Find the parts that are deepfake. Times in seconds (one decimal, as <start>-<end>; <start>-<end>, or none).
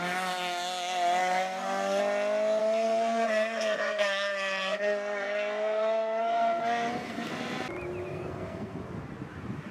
1.2-2.0; 2.6-7.3; 8.1-8.8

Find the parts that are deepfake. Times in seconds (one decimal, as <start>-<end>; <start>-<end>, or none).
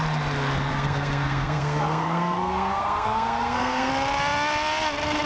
0.7-3.9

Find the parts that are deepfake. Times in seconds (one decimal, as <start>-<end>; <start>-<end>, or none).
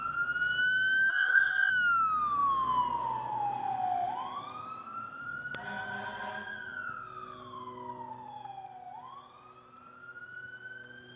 1.1-1.7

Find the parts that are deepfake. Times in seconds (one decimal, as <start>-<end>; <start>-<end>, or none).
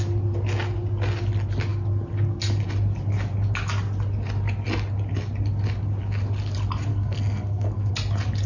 6.9-7.9